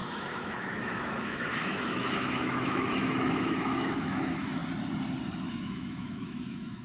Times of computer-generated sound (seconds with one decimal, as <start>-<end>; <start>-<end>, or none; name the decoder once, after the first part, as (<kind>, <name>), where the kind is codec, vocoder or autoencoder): 0.0-4.6 (autoencoder, DAC-VAE); 5.5-6.8